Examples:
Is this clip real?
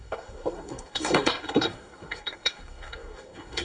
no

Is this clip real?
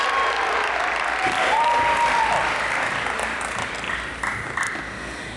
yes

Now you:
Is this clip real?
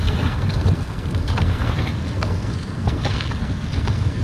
no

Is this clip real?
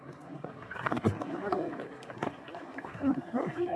no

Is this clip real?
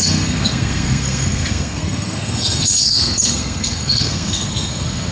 no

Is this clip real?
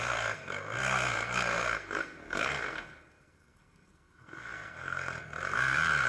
no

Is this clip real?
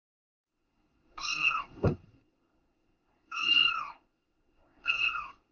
no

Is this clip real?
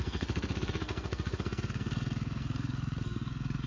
no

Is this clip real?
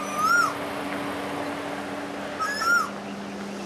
yes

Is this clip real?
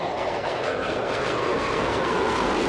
no